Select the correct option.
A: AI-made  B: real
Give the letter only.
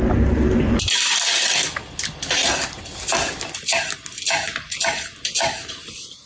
B